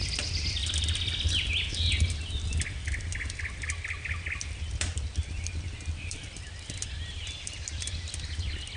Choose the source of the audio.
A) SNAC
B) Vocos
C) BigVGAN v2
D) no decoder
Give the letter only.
D